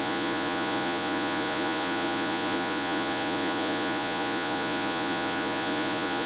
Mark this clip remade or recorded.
remade